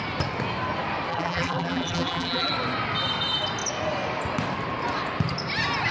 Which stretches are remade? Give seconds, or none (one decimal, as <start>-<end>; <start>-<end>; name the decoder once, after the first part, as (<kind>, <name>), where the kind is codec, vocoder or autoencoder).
1.1-2.5 (vocoder, BigVGAN v2)